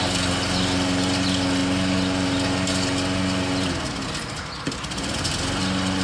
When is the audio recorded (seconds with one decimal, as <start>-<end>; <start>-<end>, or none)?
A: 0.0-6.0